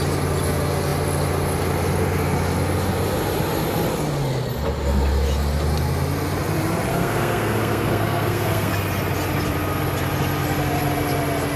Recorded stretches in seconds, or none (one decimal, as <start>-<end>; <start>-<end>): 0.0-6.9; 8.7-11.6